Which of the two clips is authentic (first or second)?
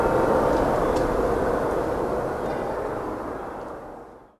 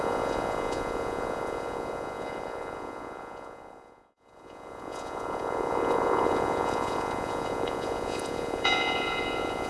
first